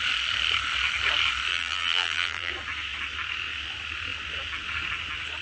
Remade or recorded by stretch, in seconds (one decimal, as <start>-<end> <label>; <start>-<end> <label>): 0.0-1.5 recorded; 1.5-2.5 remade; 2.5-5.4 recorded